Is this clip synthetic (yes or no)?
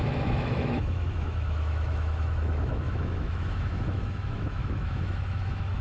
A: yes